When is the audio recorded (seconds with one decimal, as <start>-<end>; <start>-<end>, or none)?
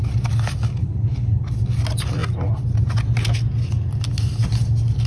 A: 0.0-0.8; 1.5-5.1